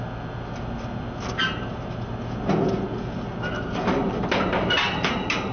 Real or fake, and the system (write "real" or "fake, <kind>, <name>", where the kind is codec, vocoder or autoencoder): real